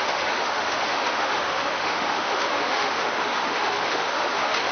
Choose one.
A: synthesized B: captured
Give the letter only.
A